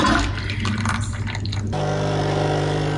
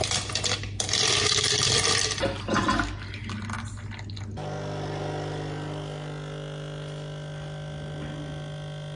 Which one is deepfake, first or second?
first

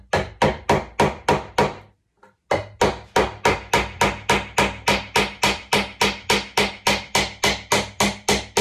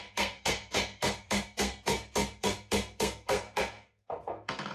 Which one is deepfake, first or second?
second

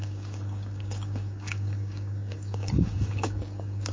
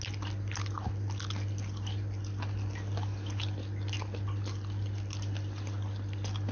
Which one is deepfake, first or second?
first